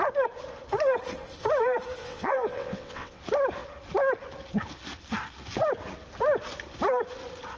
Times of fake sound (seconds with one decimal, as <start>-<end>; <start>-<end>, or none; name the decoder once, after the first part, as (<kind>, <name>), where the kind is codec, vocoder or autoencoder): 2.0-3.2 (vocoder, WaveNeXt)